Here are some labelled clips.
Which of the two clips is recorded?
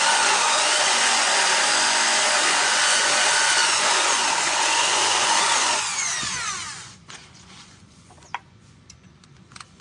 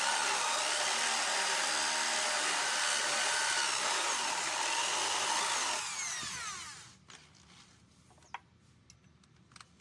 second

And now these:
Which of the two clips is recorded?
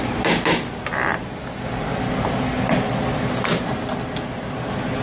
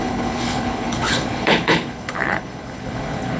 first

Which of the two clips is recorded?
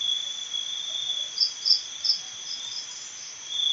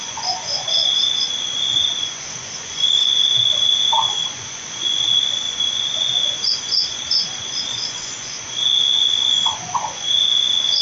first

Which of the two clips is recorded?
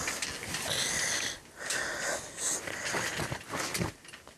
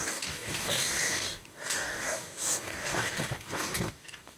first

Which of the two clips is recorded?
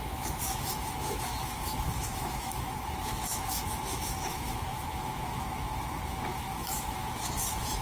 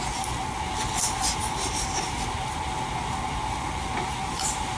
second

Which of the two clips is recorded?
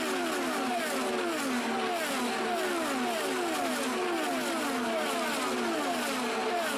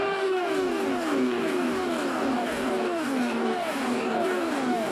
first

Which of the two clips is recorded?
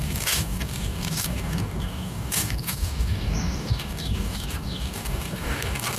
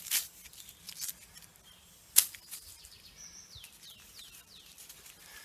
second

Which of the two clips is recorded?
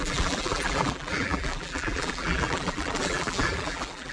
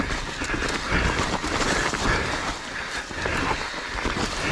second